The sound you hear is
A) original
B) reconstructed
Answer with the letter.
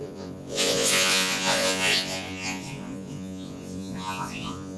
B